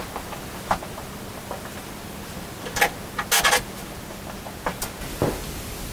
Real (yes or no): yes